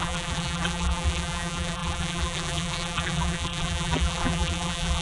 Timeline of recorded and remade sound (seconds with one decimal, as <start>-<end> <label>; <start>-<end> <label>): 0.0-5.0 remade